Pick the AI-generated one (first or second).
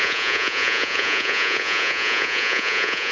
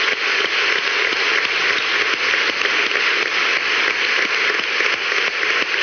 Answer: first